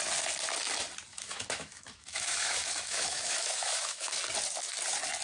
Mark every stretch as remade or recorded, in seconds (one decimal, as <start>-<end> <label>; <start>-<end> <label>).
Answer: 0.0-1.1 recorded; 1.1-4.2 remade; 4.2-5.2 recorded